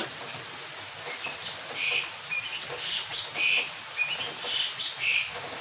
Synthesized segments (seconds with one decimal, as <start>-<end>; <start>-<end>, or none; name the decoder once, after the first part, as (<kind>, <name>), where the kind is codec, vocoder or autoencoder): none